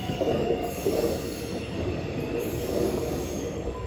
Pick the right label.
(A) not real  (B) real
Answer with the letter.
A